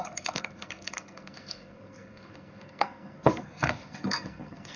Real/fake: fake